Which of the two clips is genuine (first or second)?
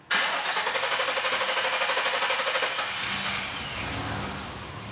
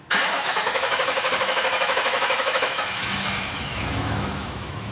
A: first